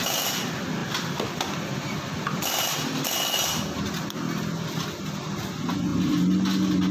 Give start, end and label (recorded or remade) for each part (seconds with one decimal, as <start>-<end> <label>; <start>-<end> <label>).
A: 0.0-6.9 recorded